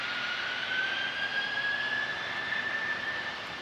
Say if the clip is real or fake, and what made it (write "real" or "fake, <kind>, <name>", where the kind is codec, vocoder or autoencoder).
real